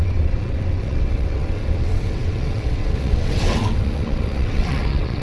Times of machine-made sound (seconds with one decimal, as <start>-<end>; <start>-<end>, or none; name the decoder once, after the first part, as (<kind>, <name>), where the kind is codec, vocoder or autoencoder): 0.0-5.2 (vocoder, WaveNeXt)